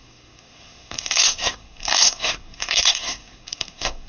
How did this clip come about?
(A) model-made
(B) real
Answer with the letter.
A